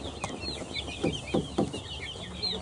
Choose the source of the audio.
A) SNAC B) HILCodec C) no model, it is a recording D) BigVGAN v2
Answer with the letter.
C